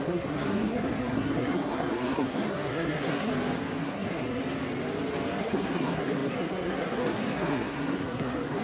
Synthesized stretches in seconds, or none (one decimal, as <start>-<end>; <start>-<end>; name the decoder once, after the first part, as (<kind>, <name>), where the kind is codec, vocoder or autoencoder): 0.0-3.3 (codec, SNAC); 3.8-4.4; 5.4-8.6